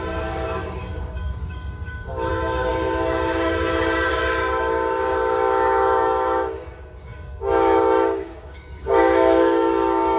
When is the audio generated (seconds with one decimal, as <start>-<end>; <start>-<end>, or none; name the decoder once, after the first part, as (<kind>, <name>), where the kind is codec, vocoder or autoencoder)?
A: 0.0-10.2 (codec, DAC)